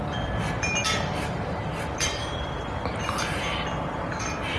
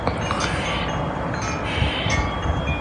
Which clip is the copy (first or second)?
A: first